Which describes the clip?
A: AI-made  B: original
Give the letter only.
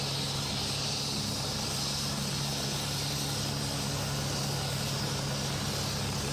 B